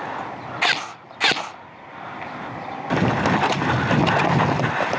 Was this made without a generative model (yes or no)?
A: yes